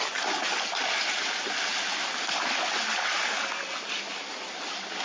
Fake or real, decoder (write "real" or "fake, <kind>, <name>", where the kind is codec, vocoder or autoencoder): real